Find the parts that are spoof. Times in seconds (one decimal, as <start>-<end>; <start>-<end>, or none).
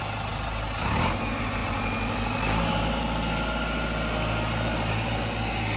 none